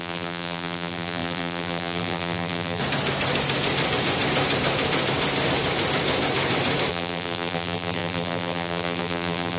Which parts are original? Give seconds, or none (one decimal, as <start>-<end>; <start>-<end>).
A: 2.8-6.9